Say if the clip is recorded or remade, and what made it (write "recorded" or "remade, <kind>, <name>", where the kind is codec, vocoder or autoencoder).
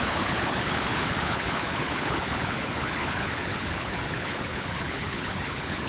remade, codec, HILCodec